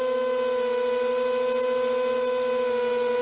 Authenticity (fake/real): real